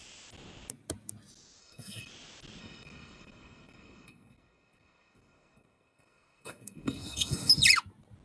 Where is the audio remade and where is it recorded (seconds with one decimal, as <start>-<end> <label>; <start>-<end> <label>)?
0.0-1.6 recorded; 1.6-2.1 remade; 2.1-2.6 recorded; 2.6-7.5 remade; 7.5-8.2 recorded